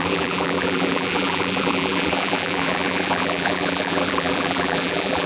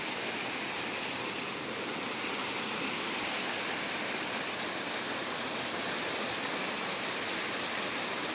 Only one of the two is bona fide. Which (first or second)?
second